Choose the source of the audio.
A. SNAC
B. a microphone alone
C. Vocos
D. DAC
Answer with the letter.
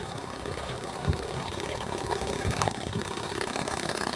A